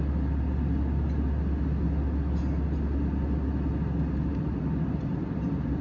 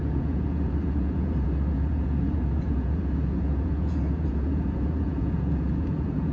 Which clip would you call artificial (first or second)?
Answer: second